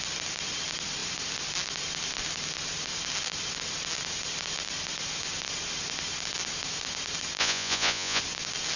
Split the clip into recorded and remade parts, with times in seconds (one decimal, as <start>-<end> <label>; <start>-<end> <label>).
0.0-7.4 recorded; 7.4-8.2 remade; 8.2-8.8 recorded